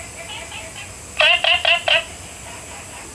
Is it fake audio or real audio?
real